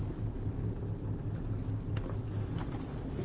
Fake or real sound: real